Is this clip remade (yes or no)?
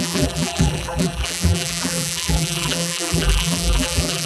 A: yes